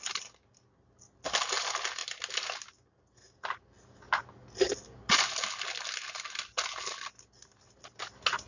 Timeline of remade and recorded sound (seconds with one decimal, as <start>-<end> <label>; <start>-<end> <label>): 0.0-8.5 recorded